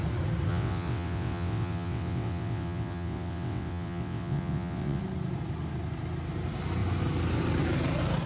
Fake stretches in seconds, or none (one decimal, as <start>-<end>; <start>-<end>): 0.5-5.0

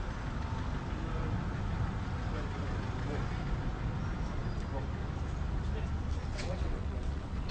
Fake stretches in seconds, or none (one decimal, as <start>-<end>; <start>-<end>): 6.3-7.5

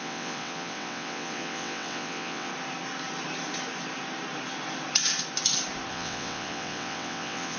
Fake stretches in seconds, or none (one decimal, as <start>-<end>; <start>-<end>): 0.0-2.5; 5.9-7.6

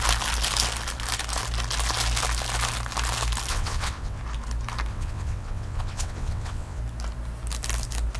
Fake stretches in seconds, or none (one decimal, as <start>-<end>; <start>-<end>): 3.5-4.2; 4.9-6.8